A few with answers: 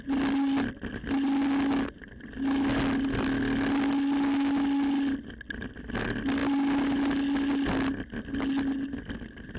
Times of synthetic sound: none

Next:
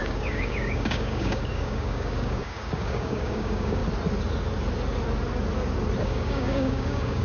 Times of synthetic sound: 0.0-3.8; 6.0-7.2

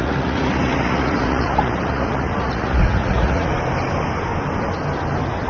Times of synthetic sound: 0.0-3.5

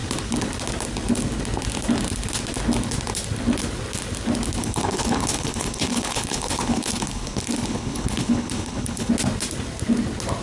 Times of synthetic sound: 4.6-9.1

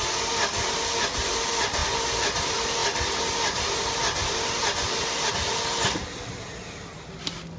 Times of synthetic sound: none